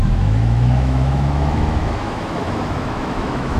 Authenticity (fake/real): fake